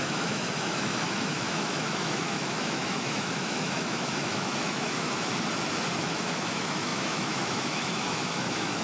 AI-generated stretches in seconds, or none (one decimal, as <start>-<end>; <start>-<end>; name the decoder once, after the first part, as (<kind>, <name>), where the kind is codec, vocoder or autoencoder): 0.0-5.3 (autoencoder, DAC-VAE); 6.0-8.8